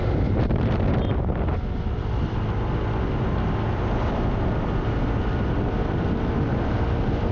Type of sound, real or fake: real